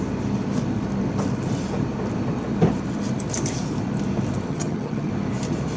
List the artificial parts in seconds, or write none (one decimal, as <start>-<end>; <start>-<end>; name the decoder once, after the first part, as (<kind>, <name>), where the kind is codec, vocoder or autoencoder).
4.5-5.1 (vocoder, HiFi-GAN)